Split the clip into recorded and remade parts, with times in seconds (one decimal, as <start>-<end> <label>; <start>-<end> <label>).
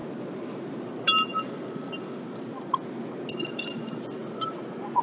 0.0-5.0 recorded